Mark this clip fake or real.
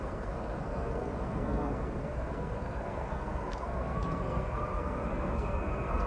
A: fake